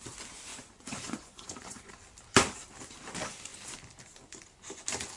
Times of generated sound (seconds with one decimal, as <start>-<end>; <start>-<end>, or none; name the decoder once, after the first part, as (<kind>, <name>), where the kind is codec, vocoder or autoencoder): 0.5-1.9 (vocoder, Vocos)